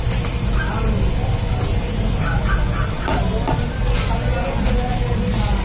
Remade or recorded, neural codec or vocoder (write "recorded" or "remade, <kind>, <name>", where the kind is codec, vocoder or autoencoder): recorded